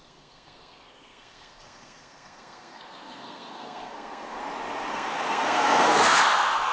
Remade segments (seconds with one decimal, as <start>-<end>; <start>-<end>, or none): 0.0-4.4; 4.9-6.7